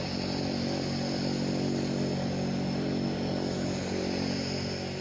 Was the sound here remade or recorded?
recorded